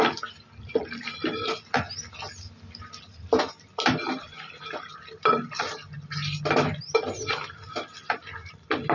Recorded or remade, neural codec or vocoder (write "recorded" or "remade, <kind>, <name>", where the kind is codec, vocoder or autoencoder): recorded